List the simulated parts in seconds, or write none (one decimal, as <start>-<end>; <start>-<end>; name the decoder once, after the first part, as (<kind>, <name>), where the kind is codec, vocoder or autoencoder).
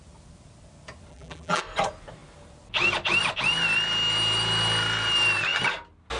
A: 1.1-1.6 (vocoder, BigVGAN v2)